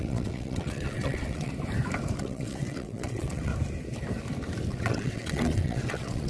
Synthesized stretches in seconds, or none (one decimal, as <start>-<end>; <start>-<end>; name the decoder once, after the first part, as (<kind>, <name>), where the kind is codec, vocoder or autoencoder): 0.0-1.5 (vocoder, WaveNeXt); 2.2-3.5; 4.7-6.3